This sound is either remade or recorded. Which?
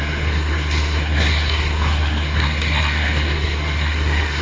remade